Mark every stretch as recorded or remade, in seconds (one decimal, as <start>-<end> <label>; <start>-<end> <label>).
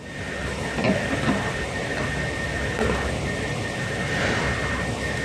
0.0-5.2 recorded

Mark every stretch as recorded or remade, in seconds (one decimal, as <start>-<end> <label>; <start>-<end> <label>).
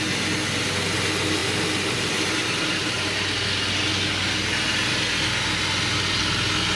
0.0-6.8 recorded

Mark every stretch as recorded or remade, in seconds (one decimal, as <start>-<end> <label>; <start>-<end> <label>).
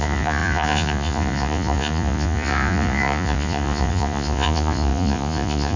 0.0-5.8 remade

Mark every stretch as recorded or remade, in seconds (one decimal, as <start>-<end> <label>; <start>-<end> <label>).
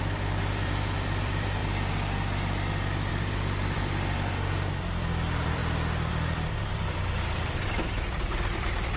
0.0-1.6 remade; 1.6-3.1 recorded; 3.1-5.6 remade; 5.6-6.1 recorded; 6.1-9.0 remade